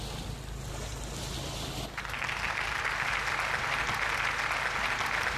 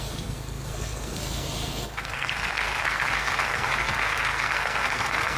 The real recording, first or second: first